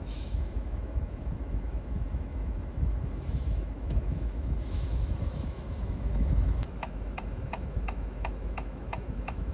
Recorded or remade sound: remade